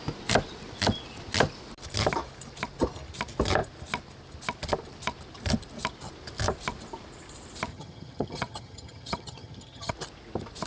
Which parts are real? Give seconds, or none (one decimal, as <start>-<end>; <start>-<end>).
0.0-7.7; 9.9-10.7

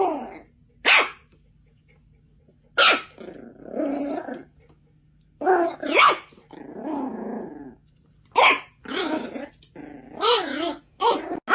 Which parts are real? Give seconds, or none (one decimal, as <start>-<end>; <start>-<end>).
0.0-11.5

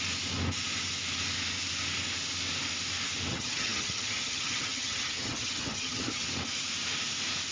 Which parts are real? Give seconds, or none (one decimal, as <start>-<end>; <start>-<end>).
0.0-3.3; 6.2-7.5

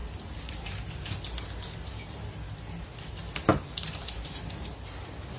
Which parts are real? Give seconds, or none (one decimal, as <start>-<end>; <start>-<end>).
0.0-5.4

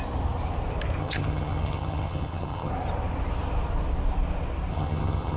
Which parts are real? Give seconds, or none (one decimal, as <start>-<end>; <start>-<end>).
0.0-1.0; 2.7-4.7

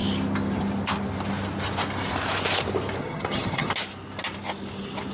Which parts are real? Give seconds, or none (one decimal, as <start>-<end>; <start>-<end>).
0.0-3.0; 3.7-5.1

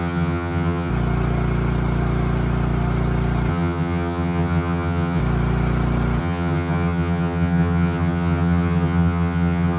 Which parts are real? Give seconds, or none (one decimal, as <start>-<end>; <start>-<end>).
0.9-3.5; 5.2-6.2

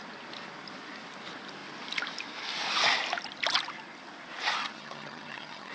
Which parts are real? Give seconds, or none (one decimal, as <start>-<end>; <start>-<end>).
0.0-4.6